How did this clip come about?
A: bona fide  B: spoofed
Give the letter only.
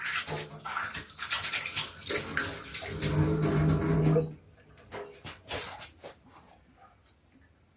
A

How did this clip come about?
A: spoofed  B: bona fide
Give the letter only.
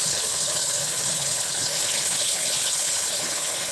A